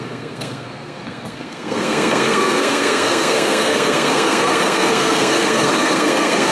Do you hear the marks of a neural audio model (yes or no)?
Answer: yes